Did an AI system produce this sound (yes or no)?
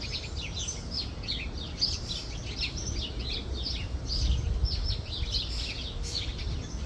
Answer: no